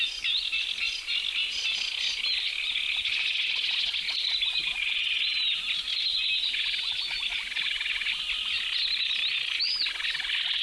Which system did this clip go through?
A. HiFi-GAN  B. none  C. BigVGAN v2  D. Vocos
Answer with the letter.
B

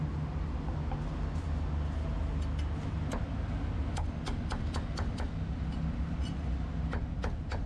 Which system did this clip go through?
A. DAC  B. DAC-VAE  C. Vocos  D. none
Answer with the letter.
D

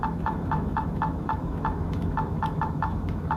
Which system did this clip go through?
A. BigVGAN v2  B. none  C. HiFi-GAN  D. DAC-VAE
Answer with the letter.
D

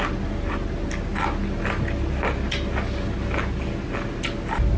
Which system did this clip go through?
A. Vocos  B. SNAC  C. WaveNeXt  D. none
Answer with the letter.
D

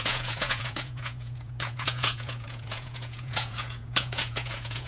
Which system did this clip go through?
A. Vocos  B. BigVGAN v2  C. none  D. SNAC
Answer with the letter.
A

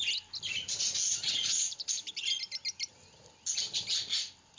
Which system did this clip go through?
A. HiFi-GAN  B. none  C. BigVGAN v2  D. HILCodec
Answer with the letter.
B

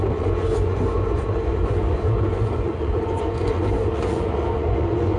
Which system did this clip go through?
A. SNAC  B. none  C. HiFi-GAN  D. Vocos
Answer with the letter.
D